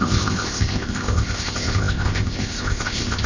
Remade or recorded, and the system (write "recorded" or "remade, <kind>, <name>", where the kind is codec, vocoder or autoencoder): remade, codec, ZipCodec